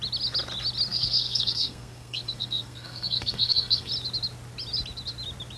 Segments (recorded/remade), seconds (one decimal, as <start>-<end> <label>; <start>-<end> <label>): 0.0-0.9 recorded; 0.9-3.9 remade; 3.9-5.6 recorded